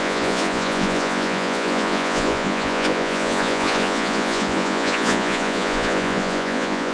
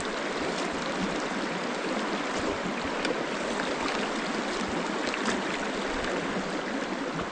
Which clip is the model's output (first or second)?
first